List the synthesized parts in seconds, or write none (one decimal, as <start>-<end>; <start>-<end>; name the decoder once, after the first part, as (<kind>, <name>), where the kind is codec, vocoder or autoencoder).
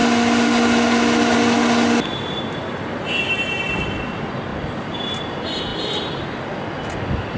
none